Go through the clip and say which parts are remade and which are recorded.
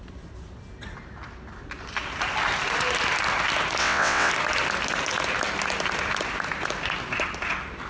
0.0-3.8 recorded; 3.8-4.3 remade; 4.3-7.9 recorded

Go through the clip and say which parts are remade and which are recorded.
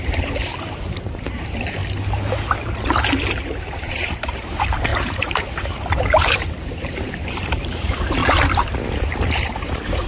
0.0-0.5 remade; 0.5-1.0 recorded; 1.0-1.8 remade; 1.8-3.4 recorded; 3.4-8.2 remade; 8.2-9.2 recorded; 9.2-10.1 remade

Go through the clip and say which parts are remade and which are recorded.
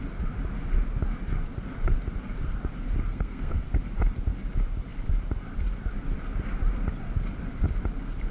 0.0-3.1 recorded; 3.1-3.7 remade; 3.7-8.3 recorded